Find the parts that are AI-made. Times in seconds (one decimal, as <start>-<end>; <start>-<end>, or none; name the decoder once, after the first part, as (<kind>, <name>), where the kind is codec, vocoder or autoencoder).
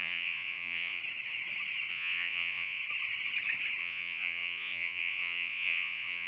0.0-1.0 (vocoder, Vocos); 1.9-2.8; 3.8-6.3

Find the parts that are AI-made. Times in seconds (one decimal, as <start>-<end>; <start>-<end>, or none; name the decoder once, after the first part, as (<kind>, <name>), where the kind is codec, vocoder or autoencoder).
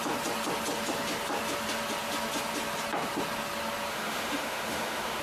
3.9-5.2 (autoencoder, DAC-VAE)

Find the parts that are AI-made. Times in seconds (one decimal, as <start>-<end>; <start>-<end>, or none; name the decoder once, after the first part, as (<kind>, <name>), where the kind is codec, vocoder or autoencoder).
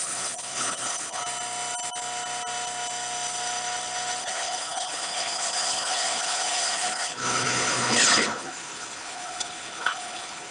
0.0-1.2 (codec, HILCodec); 4.2-10.5